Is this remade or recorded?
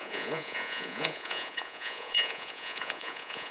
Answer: remade